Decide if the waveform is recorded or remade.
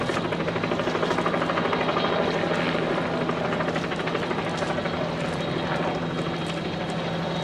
recorded